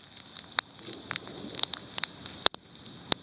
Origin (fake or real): real